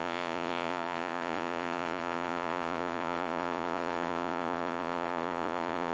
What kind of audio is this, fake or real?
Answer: fake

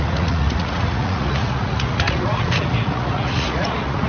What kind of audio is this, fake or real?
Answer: fake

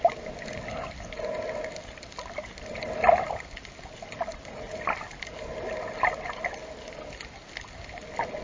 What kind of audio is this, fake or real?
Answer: real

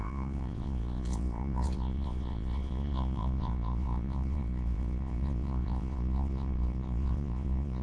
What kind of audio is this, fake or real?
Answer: fake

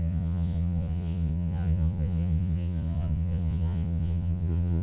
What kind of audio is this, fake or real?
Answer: fake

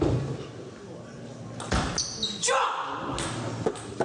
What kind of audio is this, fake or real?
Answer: real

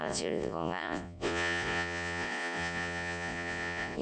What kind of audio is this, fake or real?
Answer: fake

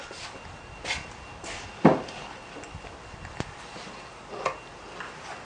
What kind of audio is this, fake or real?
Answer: real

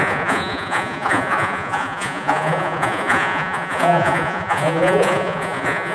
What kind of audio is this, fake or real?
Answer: fake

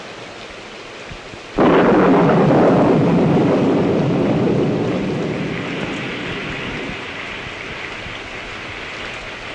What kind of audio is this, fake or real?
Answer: real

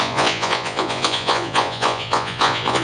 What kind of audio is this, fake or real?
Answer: fake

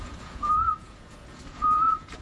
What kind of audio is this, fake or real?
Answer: fake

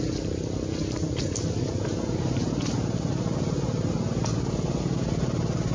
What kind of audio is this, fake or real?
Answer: real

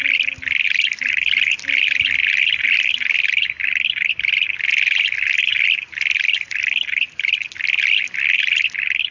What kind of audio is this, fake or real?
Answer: real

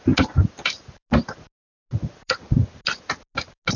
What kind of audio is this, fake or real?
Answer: real